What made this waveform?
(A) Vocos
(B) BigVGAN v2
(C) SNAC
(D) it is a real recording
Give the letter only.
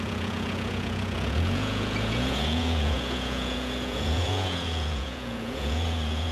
A